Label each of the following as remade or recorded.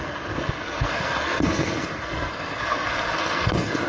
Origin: remade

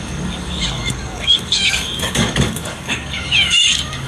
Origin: remade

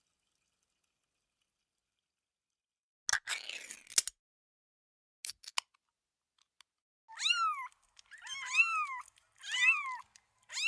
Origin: recorded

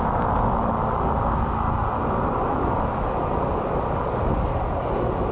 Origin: recorded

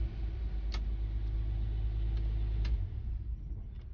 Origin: recorded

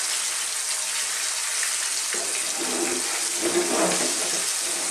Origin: recorded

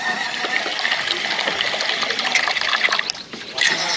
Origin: recorded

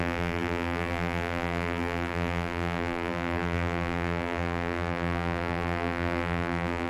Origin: remade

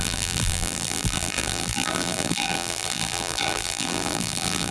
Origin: remade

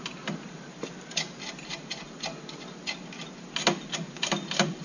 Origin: recorded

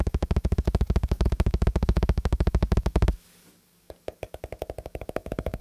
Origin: remade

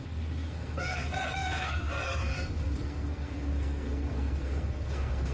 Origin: remade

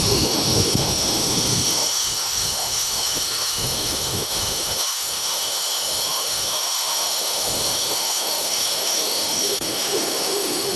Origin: remade